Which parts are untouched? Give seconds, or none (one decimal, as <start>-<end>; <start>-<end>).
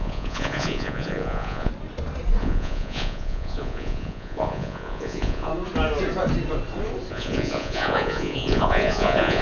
1.7-2.4; 5.5-7.1